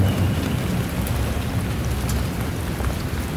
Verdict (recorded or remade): recorded